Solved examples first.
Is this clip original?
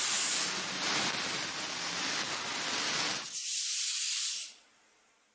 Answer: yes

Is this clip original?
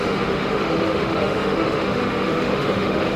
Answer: no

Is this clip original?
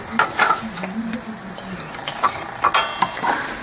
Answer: yes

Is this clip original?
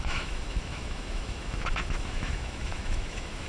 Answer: no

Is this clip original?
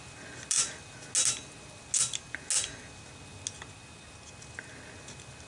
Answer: yes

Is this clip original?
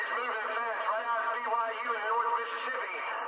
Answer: yes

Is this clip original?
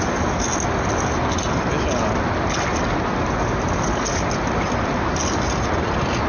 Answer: yes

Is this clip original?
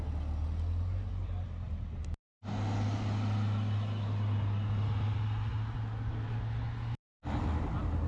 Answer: yes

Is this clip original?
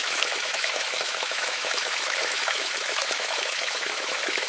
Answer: no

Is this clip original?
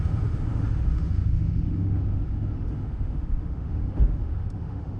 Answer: no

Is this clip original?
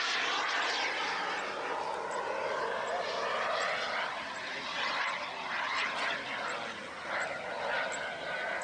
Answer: yes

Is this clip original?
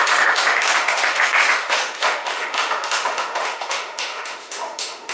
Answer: no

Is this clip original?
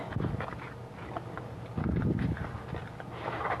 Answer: yes